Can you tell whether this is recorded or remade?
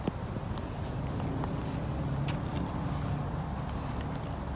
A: recorded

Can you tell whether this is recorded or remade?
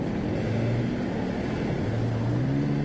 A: recorded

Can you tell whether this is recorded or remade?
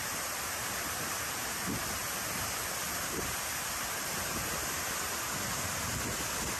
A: recorded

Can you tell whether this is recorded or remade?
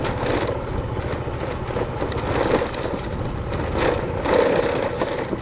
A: recorded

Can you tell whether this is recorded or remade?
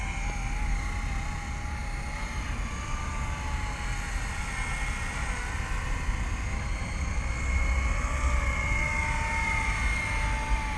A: recorded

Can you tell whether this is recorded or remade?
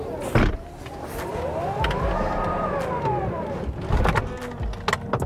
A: recorded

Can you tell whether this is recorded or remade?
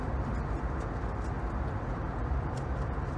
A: recorded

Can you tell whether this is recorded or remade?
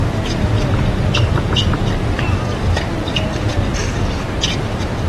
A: recorded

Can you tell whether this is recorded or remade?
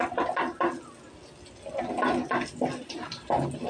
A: recorded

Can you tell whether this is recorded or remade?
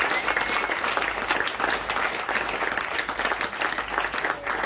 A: recorded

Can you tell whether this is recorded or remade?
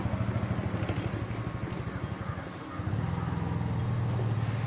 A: recorded